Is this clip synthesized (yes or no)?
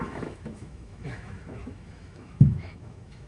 yes